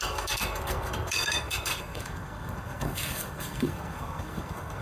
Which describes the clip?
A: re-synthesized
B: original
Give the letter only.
A